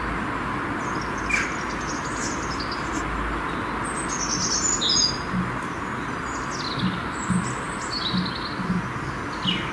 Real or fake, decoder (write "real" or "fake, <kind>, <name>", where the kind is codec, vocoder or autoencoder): real